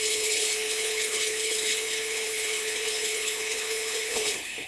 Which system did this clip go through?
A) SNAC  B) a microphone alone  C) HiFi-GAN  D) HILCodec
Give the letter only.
D